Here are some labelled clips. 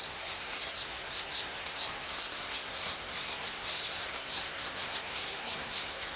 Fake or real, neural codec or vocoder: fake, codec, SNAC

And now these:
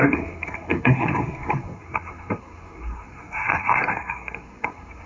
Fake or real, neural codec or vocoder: fake, codec, SNAC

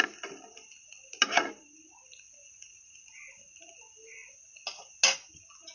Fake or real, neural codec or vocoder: real